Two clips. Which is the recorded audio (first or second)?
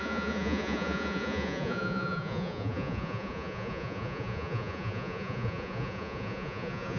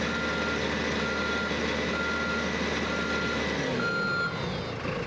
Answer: second